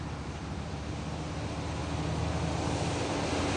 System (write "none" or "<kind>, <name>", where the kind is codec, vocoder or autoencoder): none